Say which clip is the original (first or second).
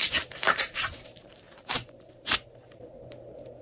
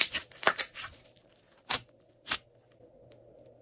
second